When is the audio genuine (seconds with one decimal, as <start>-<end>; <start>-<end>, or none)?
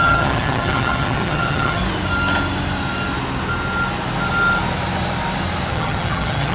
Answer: 1.8-5.7